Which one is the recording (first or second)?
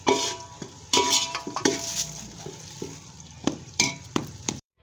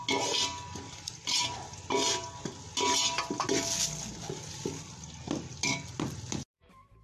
second